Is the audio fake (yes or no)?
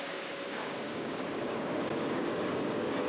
yes